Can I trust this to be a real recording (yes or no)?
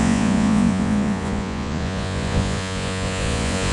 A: no